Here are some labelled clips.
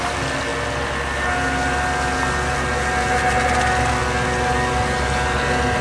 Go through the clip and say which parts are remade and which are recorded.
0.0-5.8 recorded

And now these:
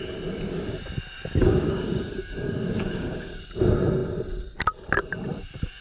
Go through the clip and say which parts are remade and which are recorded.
0.0-1.4 recorded; 1.4-3.4 remade; 3.4-5.8 recorded

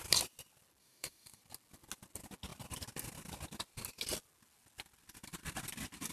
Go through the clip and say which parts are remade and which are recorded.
0.0-0.8 recorded; 0.8-1.4 remade; 1.4-6.1 recorded

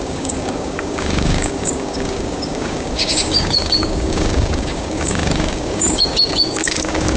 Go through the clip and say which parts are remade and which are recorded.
0.0-7.2 remade

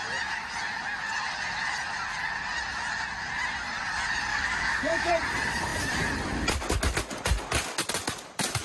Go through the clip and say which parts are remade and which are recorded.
0.0-4.3 recorded; 4.3-5.1 remade; 5.1-8.6 recorded

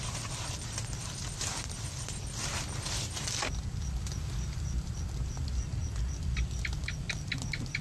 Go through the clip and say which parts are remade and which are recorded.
0.0-7.8 recorded